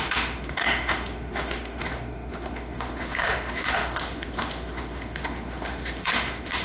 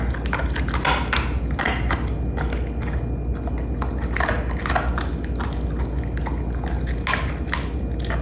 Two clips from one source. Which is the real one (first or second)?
second